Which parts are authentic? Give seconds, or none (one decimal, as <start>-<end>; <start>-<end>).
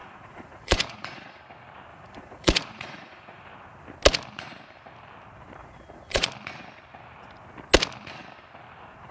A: 1.4-1.9; 3.5-5.6; 6.3-9.1